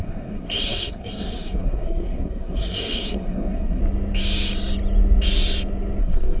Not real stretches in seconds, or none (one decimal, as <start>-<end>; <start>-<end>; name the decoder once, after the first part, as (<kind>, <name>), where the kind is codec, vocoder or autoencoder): 0.0-3.8 (codec, SNAC); 6.0-6.4